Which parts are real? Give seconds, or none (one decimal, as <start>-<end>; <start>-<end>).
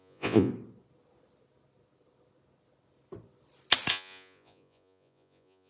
0.5-3.9